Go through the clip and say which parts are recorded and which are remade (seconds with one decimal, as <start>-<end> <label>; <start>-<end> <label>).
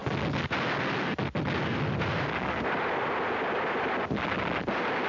0.0-5.1 recorded